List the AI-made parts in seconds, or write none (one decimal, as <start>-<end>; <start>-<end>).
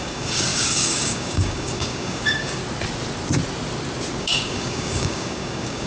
0.0-2.6; 4.2-5.9